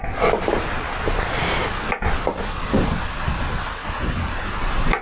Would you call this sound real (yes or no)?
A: yes